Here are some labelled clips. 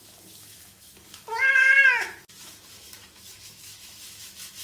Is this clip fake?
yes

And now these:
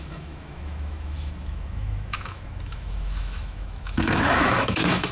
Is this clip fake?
yes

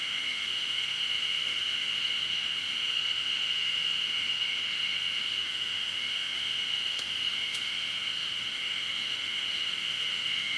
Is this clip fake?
yes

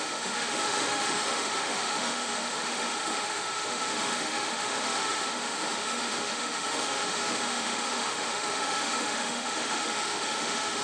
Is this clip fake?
yes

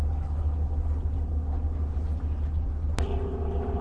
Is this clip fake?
no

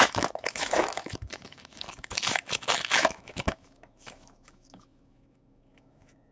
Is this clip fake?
yes